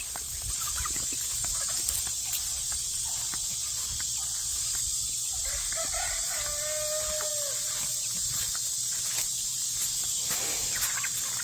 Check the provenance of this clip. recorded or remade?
recorded